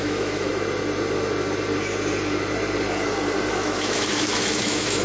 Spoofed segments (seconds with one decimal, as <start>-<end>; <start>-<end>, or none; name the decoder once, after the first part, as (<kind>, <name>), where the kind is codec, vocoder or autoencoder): 0.0-0.5 (autoencoder, DAC-VAE); 3.5-5.0